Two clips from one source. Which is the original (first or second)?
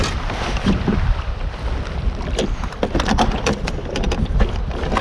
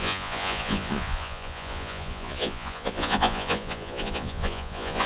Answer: first